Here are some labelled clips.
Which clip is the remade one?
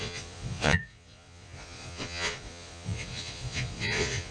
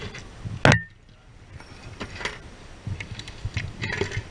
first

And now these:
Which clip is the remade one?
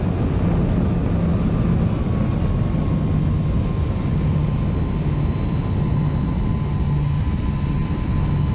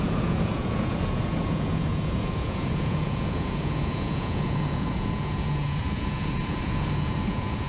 second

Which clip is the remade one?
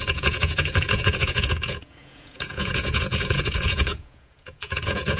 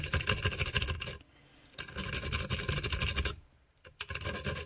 first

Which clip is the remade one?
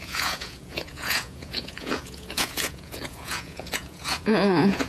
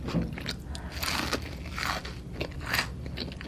first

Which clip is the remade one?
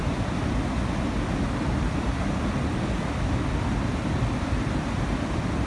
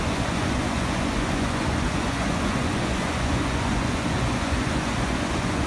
second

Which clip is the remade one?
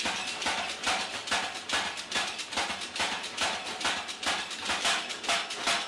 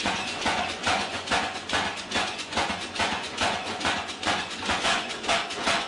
second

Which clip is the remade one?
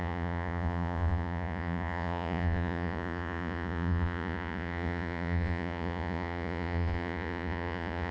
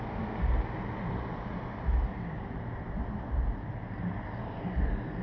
first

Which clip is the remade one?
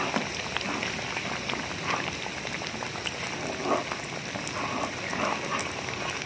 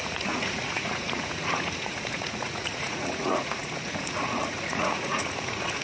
second